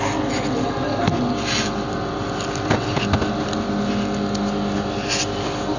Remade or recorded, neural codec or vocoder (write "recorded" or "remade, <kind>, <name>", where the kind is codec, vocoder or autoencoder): recorded